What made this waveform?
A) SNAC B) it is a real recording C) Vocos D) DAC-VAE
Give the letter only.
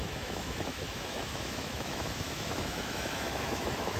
D